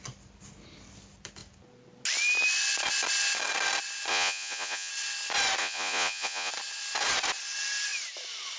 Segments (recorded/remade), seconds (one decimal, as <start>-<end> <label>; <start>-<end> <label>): 0.0-4.1 recorded; 4.1-4.9 remade; 4.9-5.6 recorded; 5.6-6.5 remade; 6.5-8.6 recorded